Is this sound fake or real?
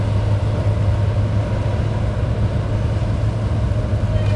real